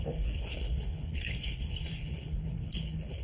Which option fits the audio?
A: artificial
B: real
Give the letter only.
A